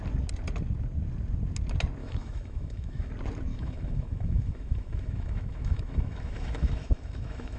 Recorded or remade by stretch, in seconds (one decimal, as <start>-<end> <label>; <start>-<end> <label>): 0.0-2.0 recorded; 2.0-3.1 remade; 3.1-3.5 recorded; 3.5-7.6 remade